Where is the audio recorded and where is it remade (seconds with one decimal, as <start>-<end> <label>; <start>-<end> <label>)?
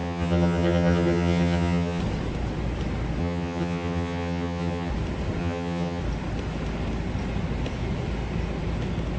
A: 0.0-2.0 remade; 2.0-3.2 recorded; 3.2-4.9 remade; 4.9-5.4 recorded; 5.4-6.0 remade; 6.0-9.2 recorded